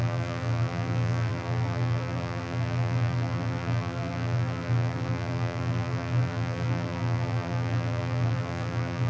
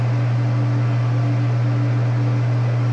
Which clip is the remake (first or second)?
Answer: first